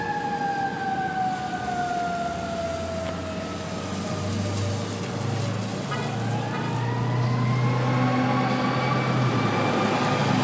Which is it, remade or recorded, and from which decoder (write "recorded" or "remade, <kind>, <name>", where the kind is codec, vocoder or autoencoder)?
recorded